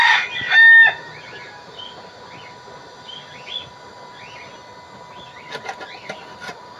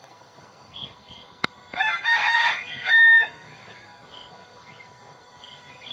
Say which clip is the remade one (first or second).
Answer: second